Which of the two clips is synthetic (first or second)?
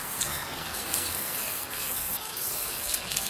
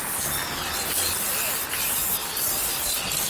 first